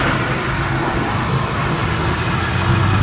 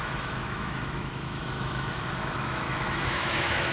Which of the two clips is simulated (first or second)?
second